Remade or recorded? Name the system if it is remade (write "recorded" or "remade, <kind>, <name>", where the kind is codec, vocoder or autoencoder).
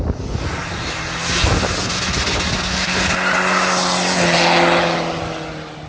recorded